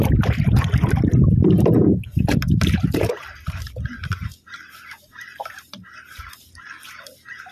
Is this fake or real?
fake